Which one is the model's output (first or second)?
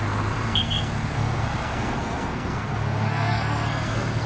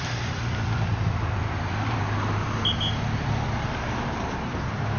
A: first